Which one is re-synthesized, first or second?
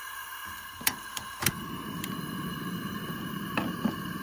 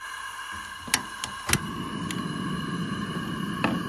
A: first